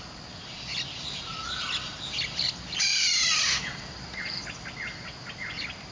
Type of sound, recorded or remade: recorded